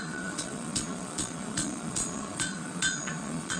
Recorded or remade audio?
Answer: remade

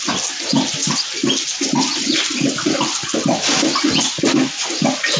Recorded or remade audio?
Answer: recorded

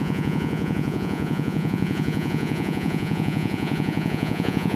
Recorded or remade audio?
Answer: remade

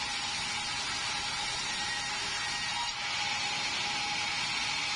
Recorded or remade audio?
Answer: recorded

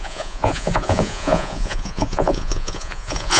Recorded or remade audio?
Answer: remade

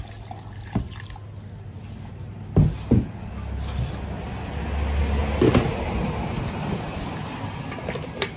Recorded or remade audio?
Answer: recorded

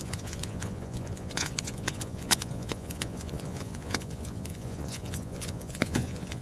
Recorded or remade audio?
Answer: remade